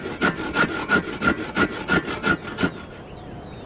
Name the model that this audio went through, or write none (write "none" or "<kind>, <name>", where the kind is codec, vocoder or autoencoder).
none